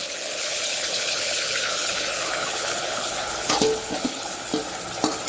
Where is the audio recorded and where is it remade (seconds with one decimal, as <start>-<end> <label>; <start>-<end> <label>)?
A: 0.0-4.5 remade; 4.5-5.3 recorded